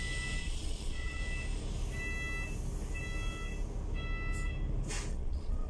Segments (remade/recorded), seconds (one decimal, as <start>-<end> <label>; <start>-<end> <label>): 0.0-0.4 recorded; 0.4-1.2 remade; 1.2-5.1 recorded; 5.1-5.7 remade